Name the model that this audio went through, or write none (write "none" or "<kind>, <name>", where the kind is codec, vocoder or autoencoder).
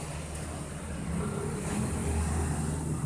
none